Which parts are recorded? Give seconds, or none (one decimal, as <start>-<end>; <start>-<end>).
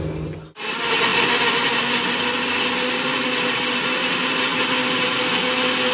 0.0-5.9